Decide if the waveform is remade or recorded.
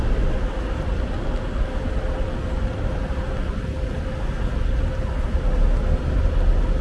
recorded